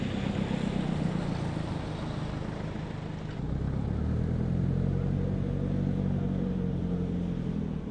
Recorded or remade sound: recorded